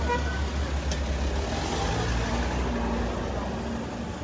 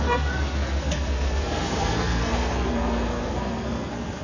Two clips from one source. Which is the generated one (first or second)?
second